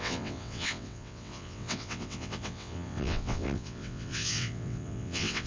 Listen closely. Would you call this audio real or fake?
fake